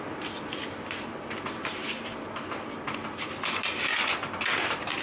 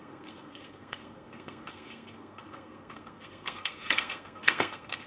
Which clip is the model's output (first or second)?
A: second